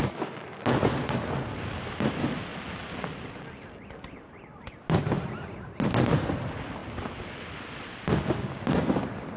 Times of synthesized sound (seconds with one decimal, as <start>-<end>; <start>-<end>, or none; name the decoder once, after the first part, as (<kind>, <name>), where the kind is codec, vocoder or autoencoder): none